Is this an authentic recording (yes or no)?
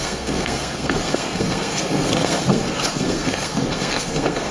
no